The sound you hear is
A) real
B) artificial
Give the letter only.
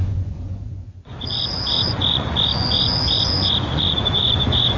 B